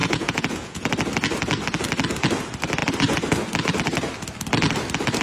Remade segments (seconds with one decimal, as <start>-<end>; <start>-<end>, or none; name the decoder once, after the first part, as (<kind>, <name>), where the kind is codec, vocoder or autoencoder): 0.0-0.9 (vocoder, Vocos)